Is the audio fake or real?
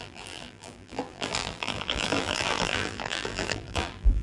fake